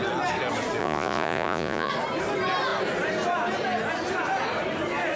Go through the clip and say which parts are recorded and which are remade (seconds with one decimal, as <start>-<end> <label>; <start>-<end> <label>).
0.0-0.8 recorded; 0.8-1.9 remade; 1.9-5.2 recorded